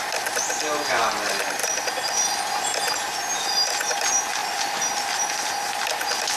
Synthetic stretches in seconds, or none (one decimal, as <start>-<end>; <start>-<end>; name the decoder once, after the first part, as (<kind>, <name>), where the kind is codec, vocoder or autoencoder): none